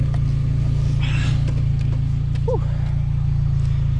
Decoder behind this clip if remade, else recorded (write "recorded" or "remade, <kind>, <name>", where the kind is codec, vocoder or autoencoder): recorded